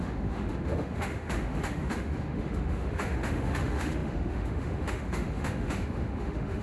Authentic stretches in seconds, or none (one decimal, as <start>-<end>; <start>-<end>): none

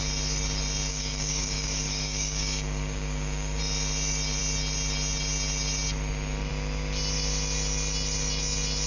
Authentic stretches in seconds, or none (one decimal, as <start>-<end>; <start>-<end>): 0.0-0.9; 3.6-8.9

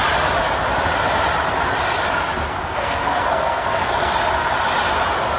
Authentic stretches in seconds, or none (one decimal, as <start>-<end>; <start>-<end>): 0.0-2.5; 4.1-5.4

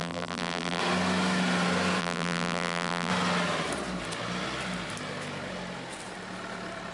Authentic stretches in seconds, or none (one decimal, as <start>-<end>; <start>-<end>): 0.8-2.0; 3.1-6.9

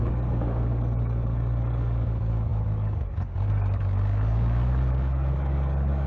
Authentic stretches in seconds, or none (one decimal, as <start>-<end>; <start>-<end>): none